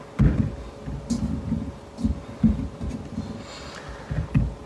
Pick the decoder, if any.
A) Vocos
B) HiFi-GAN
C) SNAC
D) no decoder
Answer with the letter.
D